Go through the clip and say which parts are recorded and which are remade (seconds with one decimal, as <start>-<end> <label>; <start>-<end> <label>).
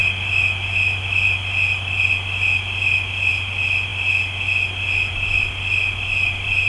0.0-6.7 recorded